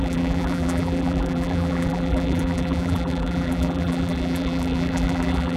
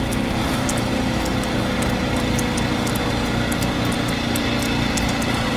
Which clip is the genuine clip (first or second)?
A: second